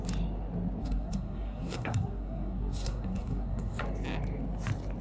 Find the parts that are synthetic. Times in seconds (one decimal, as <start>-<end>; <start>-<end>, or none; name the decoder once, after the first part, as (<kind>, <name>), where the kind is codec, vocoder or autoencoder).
0.8-3.8 (codec, SNAC)